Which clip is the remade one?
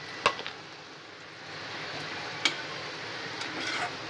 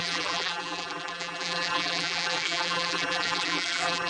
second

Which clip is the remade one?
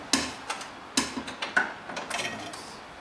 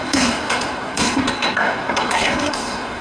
second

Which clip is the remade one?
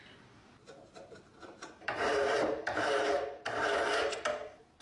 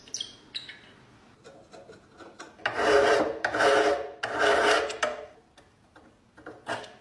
first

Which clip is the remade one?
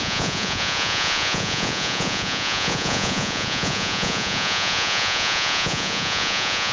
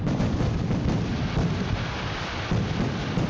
first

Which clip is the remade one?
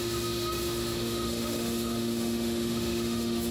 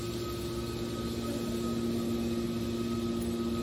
first